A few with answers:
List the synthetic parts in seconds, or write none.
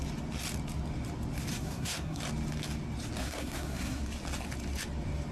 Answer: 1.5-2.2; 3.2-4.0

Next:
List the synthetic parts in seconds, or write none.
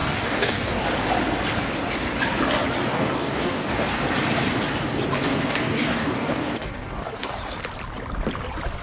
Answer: 0.0-0.8; 2.9-4.0; 5.3-7.4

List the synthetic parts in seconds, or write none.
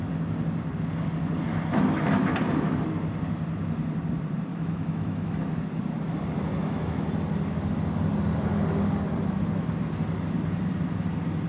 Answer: 4.5-5.4; 6.5-7.1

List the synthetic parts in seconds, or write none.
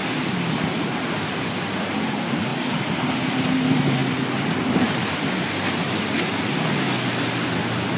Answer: none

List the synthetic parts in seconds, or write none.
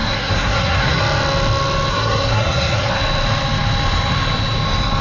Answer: 0.0-1.0; 1.9-2.9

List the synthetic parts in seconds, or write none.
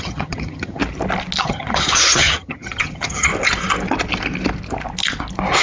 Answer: 0.0-0.8; 1.4-3.3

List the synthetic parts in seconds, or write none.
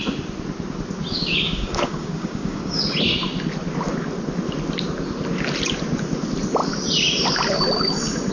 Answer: 1.1-2.8